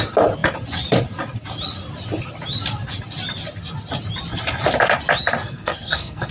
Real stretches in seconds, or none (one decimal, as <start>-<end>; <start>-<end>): 0.0-5.4